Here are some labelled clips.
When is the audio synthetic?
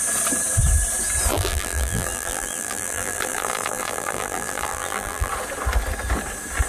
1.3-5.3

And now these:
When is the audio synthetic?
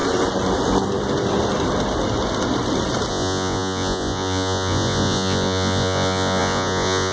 3.1-7.1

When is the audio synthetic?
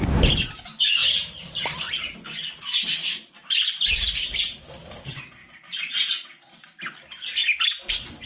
1.0-4.6; 5.4-6.1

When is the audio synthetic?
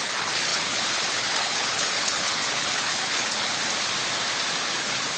0.0-3.6; 4.7-5.2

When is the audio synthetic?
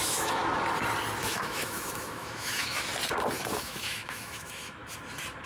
0.0-0.4; 1.2-2.9; 3.5-4.8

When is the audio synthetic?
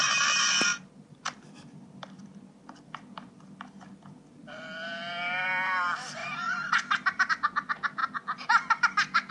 0.0-9.3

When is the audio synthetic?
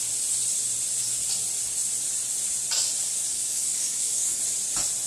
3.3-4.4